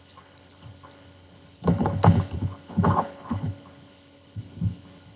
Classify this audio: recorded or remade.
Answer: remade